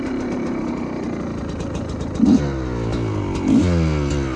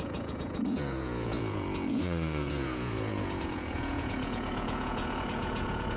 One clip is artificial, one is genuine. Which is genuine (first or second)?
first